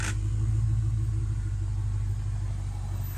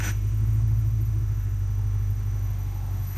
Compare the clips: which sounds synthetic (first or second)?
second